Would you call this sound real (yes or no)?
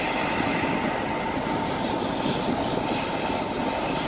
yes